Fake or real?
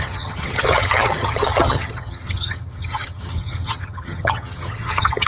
fake